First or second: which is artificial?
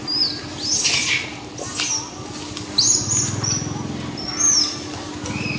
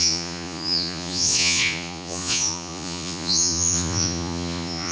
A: second